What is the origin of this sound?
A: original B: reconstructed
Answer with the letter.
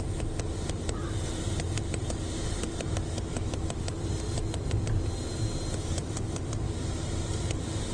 B